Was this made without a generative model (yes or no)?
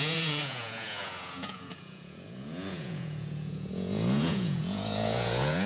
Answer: no